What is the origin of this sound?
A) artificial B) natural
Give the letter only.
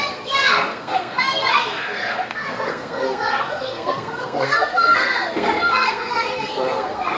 A